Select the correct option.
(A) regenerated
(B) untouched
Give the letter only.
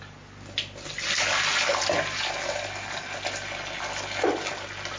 B